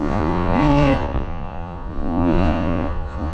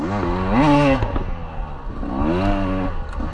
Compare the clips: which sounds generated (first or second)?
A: first